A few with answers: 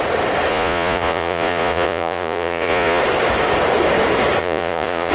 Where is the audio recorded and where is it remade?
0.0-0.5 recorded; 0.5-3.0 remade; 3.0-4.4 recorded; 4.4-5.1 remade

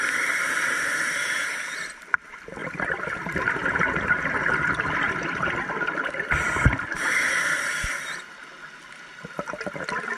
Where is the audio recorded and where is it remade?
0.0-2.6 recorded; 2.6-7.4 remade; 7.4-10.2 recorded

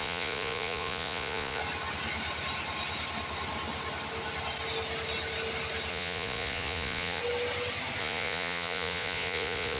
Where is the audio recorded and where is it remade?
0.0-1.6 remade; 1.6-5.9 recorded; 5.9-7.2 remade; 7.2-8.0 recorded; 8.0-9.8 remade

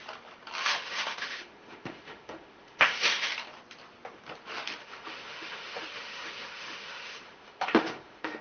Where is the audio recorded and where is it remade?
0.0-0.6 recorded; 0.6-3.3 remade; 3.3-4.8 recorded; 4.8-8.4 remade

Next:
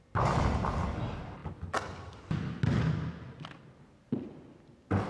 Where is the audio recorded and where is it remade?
0.0-5.1 recorded